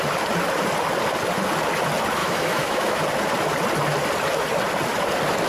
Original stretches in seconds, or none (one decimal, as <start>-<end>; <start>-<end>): 0.0-2.2; 3.0-5.5